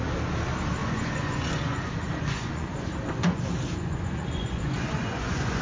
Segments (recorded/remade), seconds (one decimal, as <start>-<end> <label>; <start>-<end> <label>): 0.0-0.8 recorded; 0.8-3.4 remade; 3.4-3.8 recorded; 3.8-5.6 remade